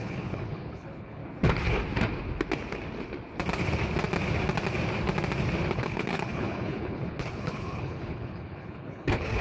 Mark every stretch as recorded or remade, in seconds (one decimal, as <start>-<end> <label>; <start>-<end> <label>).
0.0-1.2 remade; 1.2-5.7 recorded; 5.7-9.4 remade